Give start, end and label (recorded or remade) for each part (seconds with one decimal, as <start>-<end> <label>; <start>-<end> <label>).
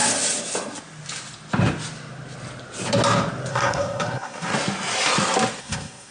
0.0-3.5 recorded; 3.5-4.5 remade; 4.5-5.6 recorded; 5.6-6.1 remade